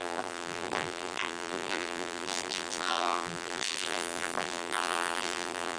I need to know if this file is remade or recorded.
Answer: remade